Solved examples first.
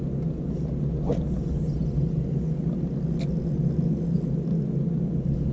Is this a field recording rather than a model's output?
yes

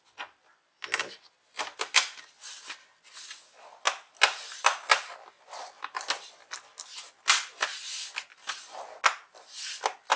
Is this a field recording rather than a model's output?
yes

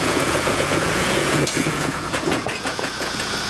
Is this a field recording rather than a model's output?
no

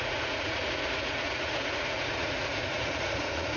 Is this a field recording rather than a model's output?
no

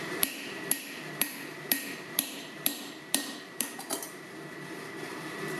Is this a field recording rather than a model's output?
no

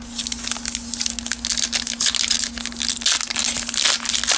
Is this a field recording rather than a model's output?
yes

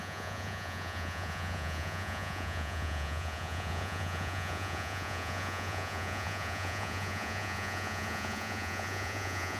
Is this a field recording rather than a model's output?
no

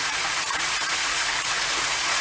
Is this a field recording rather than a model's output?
no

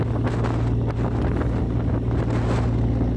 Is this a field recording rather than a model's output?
yes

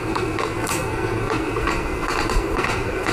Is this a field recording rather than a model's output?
no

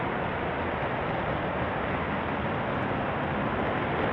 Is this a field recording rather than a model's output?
yes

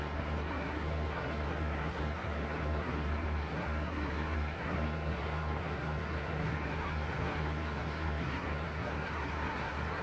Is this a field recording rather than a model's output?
no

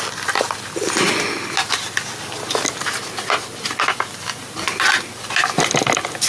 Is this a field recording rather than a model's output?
yes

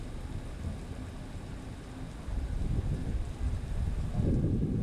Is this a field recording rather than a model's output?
yes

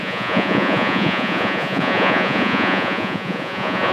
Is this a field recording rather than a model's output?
no